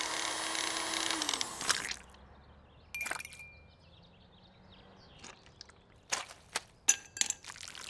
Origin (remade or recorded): recorded